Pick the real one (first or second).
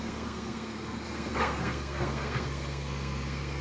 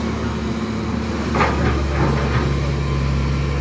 second